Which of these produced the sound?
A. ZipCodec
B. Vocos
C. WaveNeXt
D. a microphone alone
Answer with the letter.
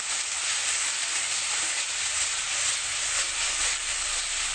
D